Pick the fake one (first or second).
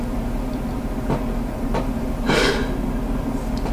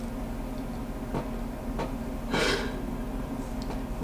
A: first